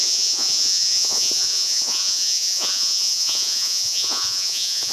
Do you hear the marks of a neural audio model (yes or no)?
yes